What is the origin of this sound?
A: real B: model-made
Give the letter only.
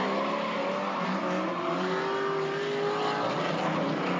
A